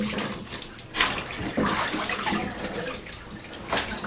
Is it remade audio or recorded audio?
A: recorded